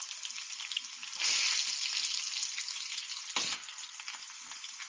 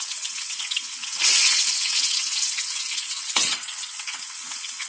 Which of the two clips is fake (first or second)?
second